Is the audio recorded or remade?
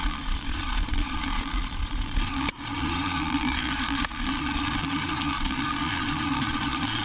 remade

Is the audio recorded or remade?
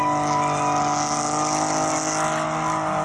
recorded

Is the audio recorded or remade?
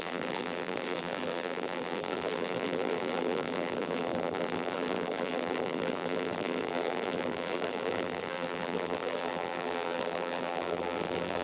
remade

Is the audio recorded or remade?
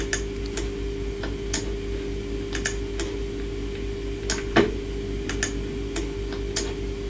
recorded